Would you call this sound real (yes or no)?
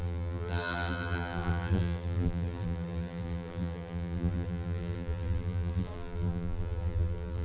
no